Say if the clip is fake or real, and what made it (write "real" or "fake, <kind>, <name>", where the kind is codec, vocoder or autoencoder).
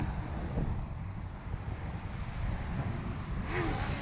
fake, vocoder, BigVGAN v2